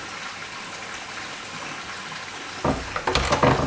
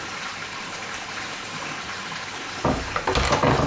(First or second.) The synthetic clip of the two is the second